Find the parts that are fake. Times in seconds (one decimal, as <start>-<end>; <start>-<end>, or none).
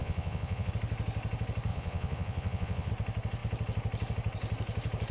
0.0-0.7; 1.7-2.9